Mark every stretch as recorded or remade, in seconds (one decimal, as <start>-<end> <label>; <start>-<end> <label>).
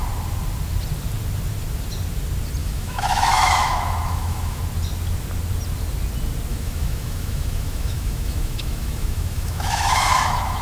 0.0-2.6 recorded; 2.6-4.6 remade; 4.6-6.5 recorded; 6.5-10.6 remade